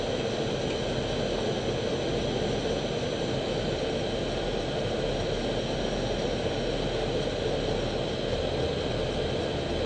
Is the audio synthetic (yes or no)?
no